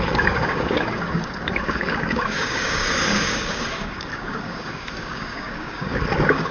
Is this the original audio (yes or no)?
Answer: no